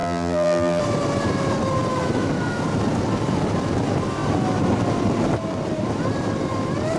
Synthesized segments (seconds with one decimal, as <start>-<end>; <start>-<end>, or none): 0.0-0.8